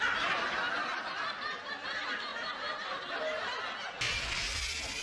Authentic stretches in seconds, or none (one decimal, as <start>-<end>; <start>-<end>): 0.0-5.0